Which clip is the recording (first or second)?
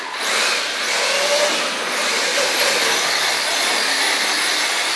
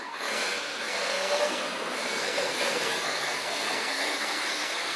first